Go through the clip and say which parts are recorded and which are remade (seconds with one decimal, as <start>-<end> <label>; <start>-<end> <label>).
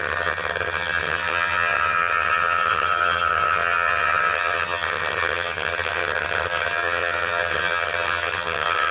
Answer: 0.0-8.9 remade